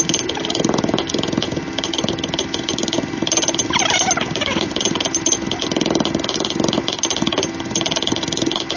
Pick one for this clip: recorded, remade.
recorded